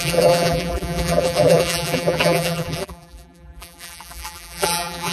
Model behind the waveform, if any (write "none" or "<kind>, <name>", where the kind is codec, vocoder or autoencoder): vocoder, BigVGAN v2